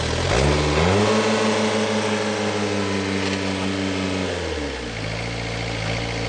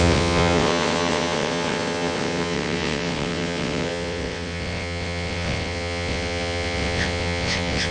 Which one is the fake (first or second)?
second